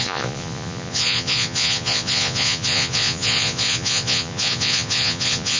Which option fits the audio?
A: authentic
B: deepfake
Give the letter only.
B